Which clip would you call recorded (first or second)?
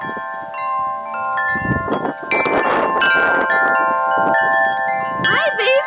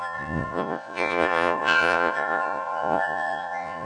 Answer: first